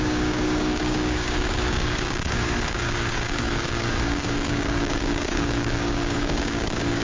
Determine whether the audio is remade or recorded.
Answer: remade